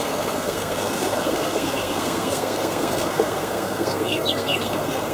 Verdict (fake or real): fake